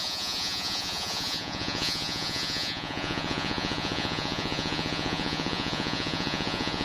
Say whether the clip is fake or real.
fake